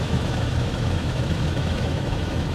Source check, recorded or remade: remade